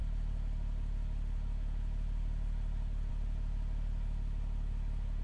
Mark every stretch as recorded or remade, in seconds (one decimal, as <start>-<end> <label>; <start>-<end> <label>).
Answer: 0.0-5.2 recorded